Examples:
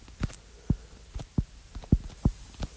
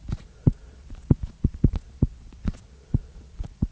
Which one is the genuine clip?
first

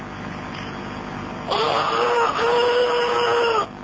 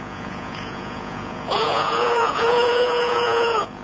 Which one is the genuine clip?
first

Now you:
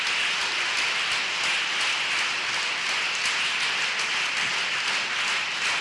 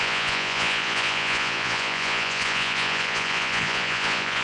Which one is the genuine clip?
first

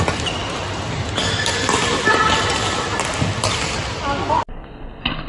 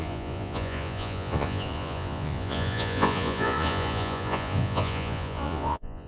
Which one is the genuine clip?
first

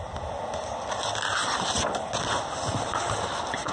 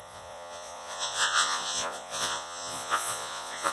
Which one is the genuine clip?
first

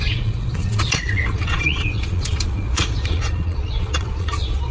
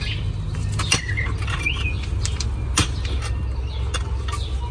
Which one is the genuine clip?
second